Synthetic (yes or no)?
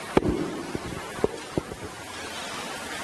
yes